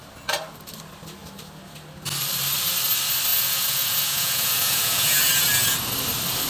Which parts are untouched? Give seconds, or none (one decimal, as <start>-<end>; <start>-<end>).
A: 0.0-3.3; 5.3-6.5